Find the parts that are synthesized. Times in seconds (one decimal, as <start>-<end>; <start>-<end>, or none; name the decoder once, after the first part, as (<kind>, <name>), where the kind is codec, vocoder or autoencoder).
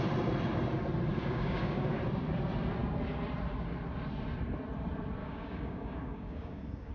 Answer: 1.1-2.0 (codec, DAC); 5.2-6.9